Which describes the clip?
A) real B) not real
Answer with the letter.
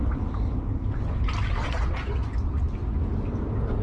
A